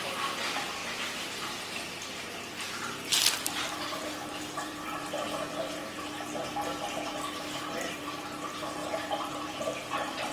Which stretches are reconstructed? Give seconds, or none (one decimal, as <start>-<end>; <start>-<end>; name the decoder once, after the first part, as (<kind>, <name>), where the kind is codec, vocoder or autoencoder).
0.0-0.8 (vocoder, BigVGAN v2); 3.1-5.8; 8.0-10.3